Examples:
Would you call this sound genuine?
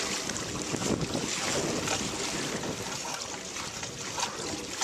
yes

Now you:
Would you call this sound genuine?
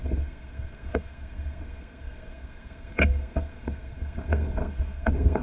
no